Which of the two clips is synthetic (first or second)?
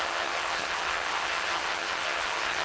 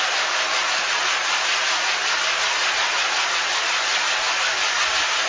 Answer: first